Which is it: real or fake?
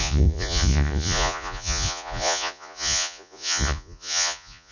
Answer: fake